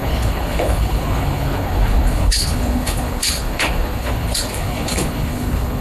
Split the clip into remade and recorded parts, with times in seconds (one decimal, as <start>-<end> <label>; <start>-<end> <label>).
0.0-5.8 remade